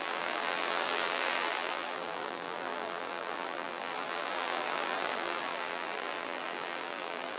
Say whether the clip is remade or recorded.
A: remade